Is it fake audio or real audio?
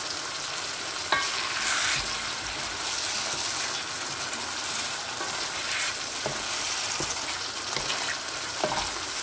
real